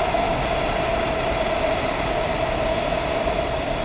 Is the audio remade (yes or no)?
yes